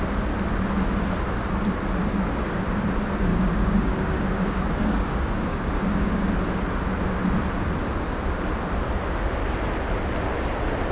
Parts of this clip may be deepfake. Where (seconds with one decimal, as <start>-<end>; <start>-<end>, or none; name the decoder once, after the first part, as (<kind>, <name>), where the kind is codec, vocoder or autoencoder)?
2.0-2.6 (codec, DAC); 3.3-6.3